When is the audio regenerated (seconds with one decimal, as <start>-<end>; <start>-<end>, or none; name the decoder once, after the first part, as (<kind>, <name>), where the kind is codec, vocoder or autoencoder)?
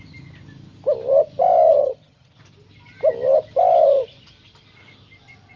1.8-2.4 (vocoder, HiFi-GAN)